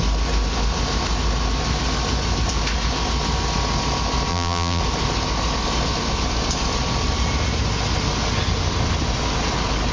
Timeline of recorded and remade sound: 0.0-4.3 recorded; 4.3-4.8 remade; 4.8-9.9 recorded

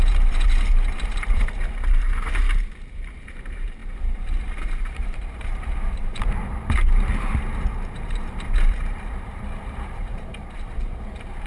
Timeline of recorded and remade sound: 0.0-10.4 remade; 10.4-11.1 recorded; 11.1-11.5 remade

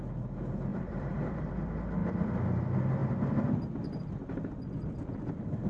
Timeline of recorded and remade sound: 0.0-0.7 recorded; 0.7-1.5 remade; 1.5-5.7 recorded

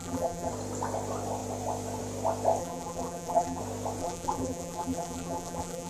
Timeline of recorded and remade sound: 0.0-0.5 remade; 0.5-2.6 recorded; 2.6-3.6 remade; 3.6-4.0 recorded; 4.0-5.9 remade

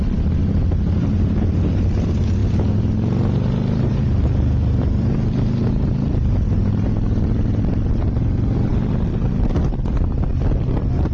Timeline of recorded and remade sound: 0.0-11.1 recorded

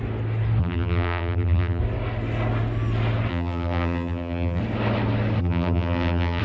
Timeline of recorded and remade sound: 0.0-0.6 recorded; 0.6-1.8 remade; 1.8-3.3 recorded; 3.3-4.6 remade; 4.6-5.4 recorded; 5.4-6.4 remade

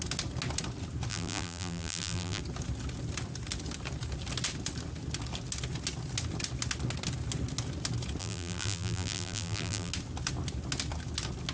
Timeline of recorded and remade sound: 0.0-1.1 recorded; 1.1-2.4 remade; 2.4-8.2 recorded; 8.2-9.9 remade; 9.9-11.5 recorded

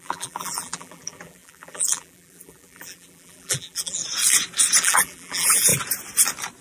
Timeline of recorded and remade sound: 0.0-4.0 remade; 4.0-4.8 recorded; 4.8-5.7 remade; 5.7-6.6 recorded